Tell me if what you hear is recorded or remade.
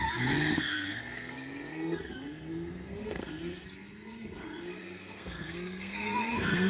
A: remade